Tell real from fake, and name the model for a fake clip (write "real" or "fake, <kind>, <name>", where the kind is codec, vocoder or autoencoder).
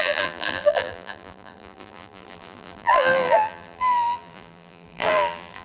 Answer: fake, vocoder, BigVGAN v2